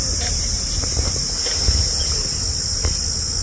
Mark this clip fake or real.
real